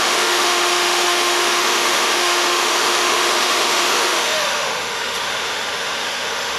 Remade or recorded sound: remade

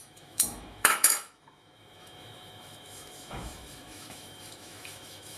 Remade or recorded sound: remade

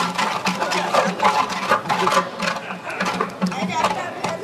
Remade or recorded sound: recorded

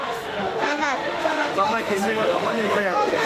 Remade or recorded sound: remade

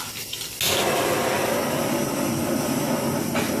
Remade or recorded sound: recorded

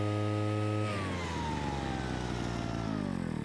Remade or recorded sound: recorded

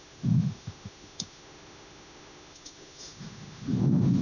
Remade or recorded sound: remade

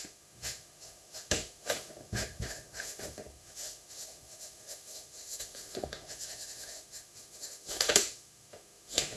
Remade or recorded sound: remade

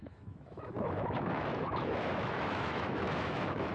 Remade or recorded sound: remade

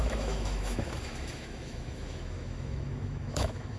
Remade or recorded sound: remade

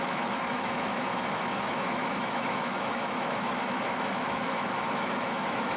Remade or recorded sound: remade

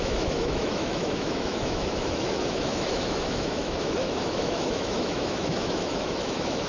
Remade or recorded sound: remade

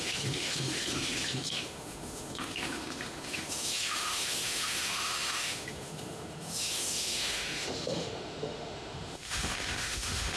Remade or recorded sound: remade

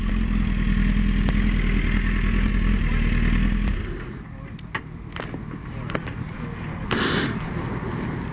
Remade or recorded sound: recorded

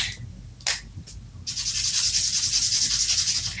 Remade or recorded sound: recorded